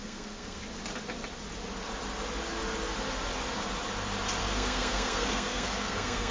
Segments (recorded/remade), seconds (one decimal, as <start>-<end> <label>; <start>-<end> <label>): 0.0-0.6 remade; 0.6-4.4 recorded; 4.4-6.3 remade